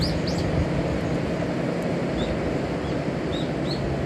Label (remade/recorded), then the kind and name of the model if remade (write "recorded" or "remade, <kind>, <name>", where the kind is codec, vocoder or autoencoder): recorded